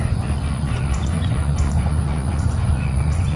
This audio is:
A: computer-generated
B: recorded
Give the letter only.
A